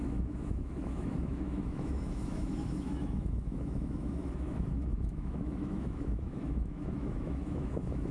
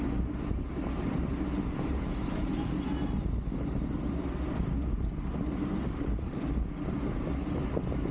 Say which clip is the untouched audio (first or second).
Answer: second